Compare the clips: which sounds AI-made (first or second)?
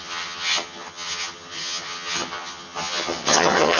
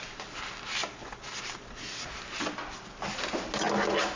first